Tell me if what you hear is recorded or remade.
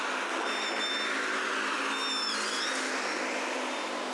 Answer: recorded